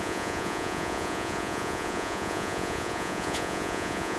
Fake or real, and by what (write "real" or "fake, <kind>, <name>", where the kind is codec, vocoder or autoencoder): fake, vocoder, Vocos